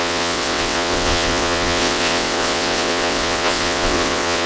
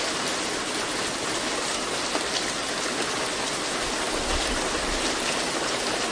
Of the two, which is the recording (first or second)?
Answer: second